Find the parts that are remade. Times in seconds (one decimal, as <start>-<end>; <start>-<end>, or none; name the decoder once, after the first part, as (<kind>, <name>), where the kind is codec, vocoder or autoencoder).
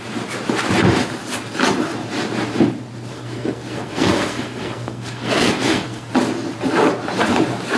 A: 3.1-6.1 (codec, SNAC)